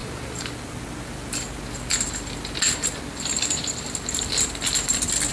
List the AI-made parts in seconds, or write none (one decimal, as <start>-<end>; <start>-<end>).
none